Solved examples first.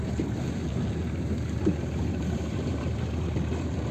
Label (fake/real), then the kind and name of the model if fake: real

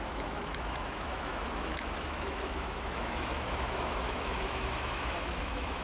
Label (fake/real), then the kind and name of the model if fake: fake, autoencoder, DAC-VAE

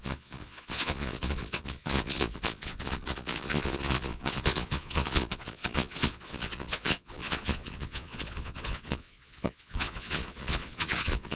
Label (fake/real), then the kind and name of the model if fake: fake, vocoder, Vocos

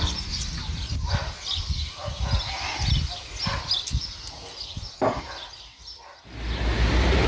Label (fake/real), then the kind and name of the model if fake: real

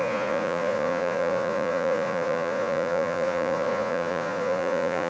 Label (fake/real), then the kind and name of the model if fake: fake, vocoder, Vocos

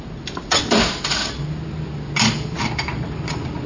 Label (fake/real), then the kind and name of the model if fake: real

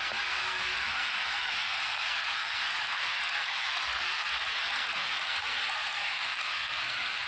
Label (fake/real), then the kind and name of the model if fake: fake, codec, SNAC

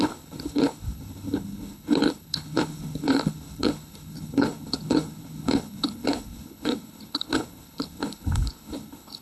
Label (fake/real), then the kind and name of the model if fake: fake, codec, HILCodec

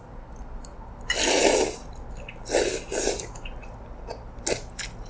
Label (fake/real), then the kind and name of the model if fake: real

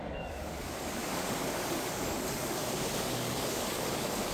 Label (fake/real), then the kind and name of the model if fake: fake, codec, DAC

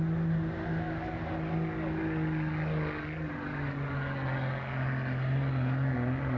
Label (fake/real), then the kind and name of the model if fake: real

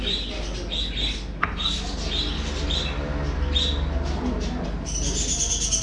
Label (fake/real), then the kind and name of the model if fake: real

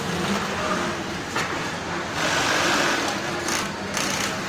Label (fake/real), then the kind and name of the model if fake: real